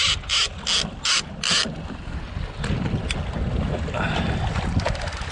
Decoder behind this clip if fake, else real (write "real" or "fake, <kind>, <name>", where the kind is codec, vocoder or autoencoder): real